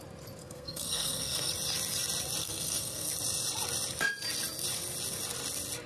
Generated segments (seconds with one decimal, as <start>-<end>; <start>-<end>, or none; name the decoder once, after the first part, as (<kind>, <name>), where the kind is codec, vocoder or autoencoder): 0.4-1.5 (codec, SNAC); 2.4-3.1